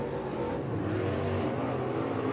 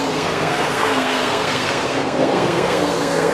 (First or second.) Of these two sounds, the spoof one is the second